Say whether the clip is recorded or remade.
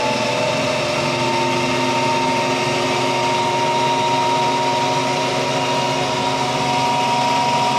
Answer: recorded